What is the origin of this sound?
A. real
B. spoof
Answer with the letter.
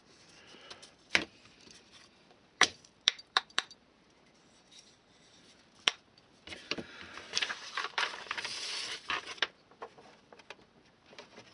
B